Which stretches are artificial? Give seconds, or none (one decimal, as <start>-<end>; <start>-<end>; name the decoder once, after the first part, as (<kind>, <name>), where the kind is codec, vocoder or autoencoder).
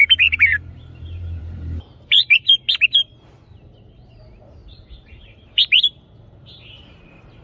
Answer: 0.0-2.6 (vocoder, BigVGAN v2); 3.8-7.4